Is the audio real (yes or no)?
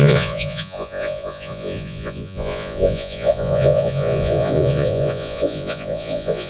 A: no